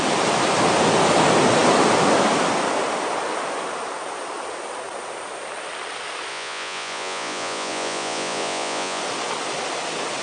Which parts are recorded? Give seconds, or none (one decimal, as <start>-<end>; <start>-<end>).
0.0-6.3; 9.0-10.2